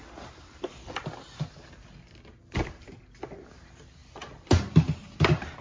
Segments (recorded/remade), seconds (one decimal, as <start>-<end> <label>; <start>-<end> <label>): 0.0-5.6 recorded